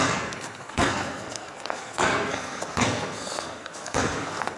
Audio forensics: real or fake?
fake